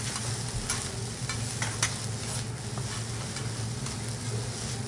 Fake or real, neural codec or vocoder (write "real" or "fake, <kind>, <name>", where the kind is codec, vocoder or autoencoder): real